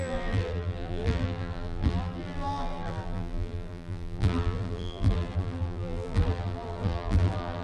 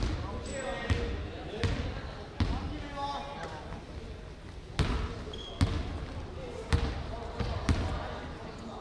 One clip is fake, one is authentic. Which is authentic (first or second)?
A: second